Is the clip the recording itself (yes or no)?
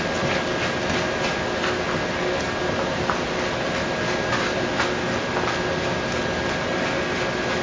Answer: yes